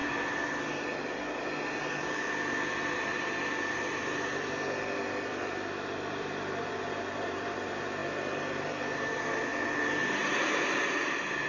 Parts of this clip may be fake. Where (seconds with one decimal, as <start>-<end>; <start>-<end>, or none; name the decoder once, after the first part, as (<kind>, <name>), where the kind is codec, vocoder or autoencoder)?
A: 4.8-9.5 (vocoder, BigVGAN v2); 11.1-11.5